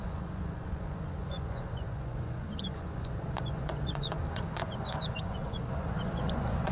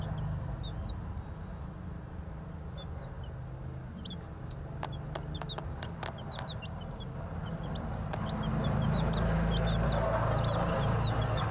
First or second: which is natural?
second